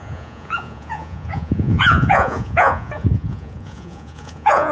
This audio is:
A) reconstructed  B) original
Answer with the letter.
A